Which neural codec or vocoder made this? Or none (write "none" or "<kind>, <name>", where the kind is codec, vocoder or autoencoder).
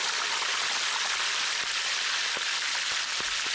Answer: none